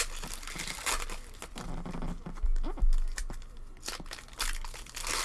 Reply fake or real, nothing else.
real